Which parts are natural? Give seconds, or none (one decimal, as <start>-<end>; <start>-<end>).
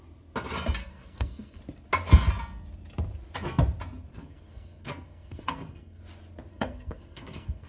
0.0-0.8; 1.6-4.1; 6.0-6.5